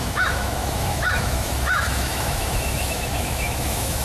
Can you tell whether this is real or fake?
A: fake